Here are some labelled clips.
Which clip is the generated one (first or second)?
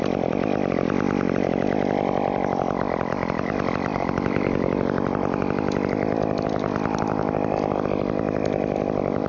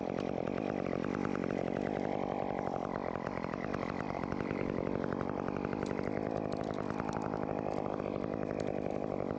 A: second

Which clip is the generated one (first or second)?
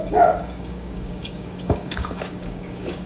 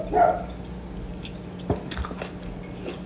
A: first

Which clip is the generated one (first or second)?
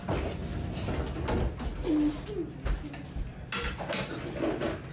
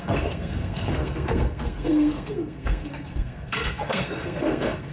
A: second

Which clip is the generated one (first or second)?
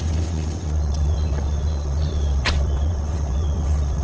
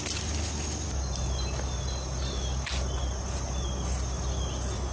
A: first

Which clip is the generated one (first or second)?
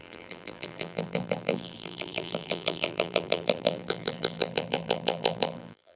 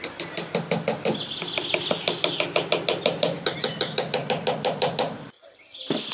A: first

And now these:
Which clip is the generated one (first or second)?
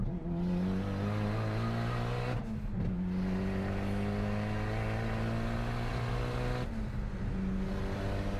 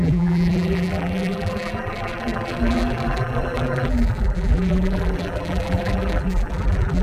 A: second